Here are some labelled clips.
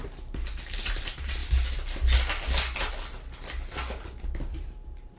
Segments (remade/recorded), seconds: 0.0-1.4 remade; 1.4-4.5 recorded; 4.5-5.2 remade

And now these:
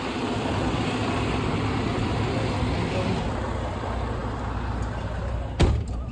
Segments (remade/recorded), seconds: 0.0-6.1 recorded